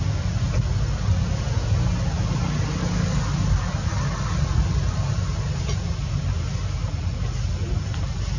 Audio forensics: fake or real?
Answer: real